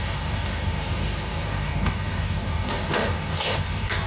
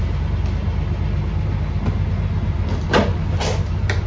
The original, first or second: second